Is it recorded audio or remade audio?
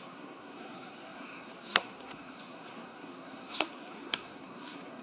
remade